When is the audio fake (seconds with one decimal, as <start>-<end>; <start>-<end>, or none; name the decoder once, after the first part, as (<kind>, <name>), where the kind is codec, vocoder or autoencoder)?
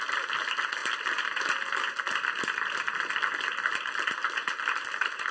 none